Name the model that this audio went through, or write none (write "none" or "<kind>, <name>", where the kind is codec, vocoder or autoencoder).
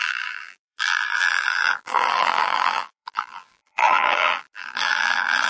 vocoder, BigVGAN v2